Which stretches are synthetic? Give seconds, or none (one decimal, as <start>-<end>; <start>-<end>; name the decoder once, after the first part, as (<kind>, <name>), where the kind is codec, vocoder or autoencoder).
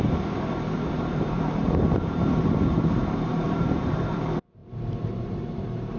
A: 0.0-4.6 (vocoder, BigVGAN v2); 5.1-6.0